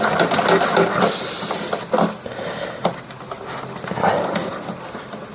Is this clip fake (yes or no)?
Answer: no